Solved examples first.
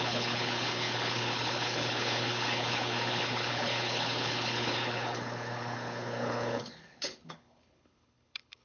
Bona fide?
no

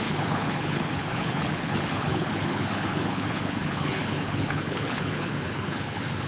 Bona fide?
no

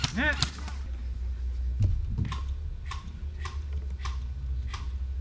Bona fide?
yes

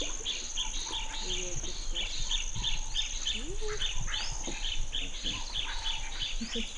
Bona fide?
yes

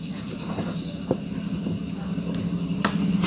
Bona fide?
yes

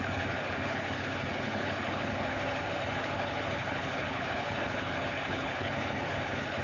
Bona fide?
no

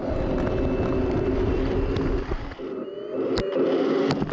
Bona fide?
yes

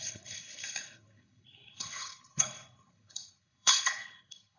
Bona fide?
no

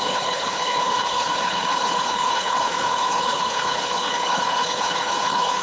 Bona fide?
no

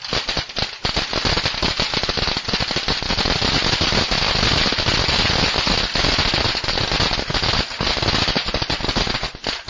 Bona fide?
yes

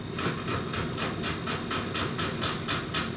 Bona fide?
yes